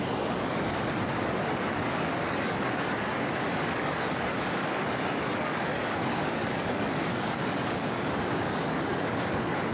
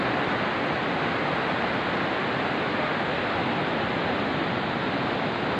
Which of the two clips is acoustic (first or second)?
second